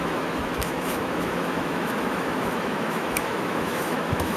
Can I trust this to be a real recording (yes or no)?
no